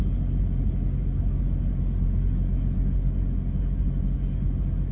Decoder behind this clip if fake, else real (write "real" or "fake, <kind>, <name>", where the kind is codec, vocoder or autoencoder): real